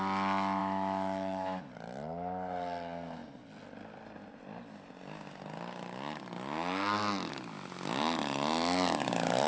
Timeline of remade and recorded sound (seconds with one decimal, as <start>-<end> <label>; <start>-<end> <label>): 0.0-0.6 recorded; 0.6-1.6 remade; 1.6-9.5 recorded